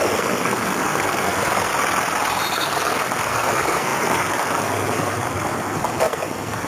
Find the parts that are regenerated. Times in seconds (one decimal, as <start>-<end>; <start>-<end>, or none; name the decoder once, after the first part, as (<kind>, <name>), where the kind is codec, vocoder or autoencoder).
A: 0.0-1.7 (codec, SNAC); 2.5-6.7